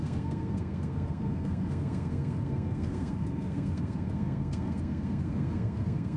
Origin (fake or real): fake